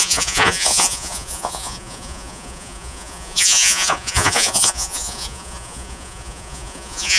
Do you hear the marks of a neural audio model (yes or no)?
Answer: yes